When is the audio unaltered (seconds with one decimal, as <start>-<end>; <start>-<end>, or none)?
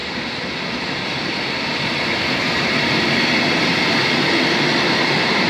0.0-2.6